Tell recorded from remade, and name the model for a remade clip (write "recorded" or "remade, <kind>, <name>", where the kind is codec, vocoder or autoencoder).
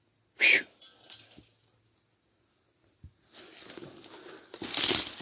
recorded